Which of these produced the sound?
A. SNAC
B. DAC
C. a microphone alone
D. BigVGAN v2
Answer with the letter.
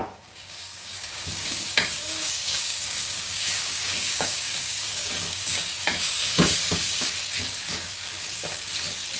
B